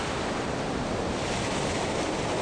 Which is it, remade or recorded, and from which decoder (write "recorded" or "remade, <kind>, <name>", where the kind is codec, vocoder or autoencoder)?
recorded